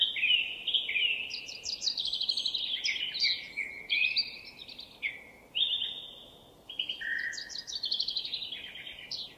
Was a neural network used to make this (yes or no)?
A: no